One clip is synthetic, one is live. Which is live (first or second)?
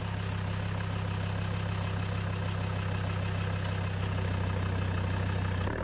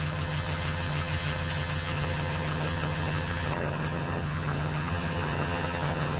first